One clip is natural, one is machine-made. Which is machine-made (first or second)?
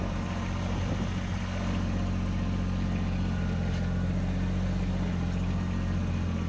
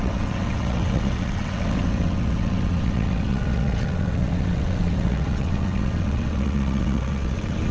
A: second